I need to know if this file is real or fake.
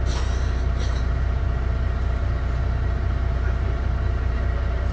real